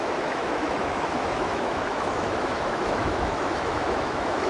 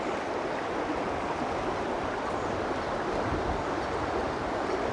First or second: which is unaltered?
second